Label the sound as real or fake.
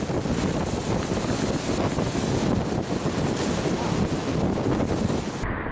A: real